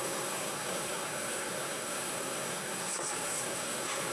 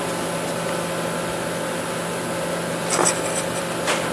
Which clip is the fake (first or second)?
first